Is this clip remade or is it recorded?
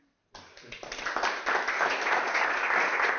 recorded